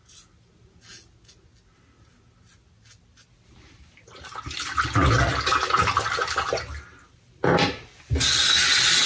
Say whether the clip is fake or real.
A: real